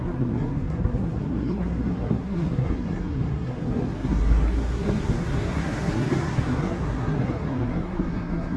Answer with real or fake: fake